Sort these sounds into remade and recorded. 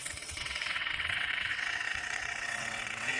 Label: remade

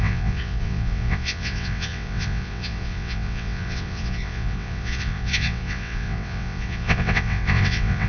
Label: remade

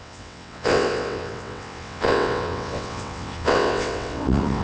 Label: remade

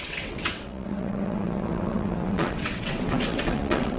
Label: remade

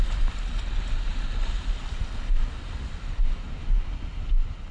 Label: recorded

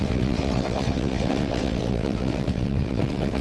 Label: remade